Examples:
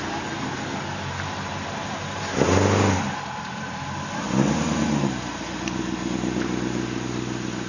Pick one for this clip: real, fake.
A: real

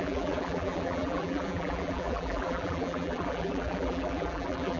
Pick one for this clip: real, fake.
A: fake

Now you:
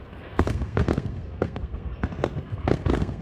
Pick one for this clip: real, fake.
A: fake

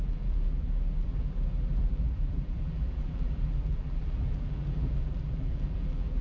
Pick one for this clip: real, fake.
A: fake